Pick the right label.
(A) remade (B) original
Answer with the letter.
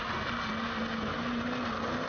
B